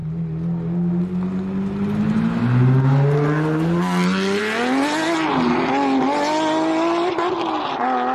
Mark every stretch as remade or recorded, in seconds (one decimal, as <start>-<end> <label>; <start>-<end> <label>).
0.0-8.1 recorded